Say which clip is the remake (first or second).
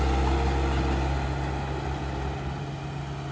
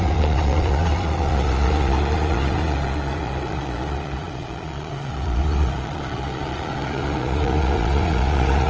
second